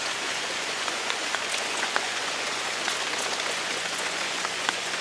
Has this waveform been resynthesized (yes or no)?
yes